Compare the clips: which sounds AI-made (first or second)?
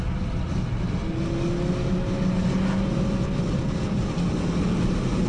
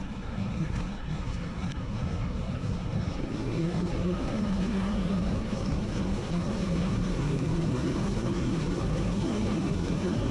second